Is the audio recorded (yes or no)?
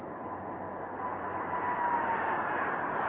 yes